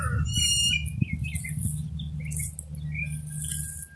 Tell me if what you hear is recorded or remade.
recorded